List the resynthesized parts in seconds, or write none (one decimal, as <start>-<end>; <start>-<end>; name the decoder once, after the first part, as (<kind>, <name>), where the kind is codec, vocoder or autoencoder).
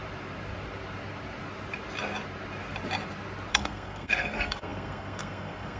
3.5-5.8 (codec, SNAC)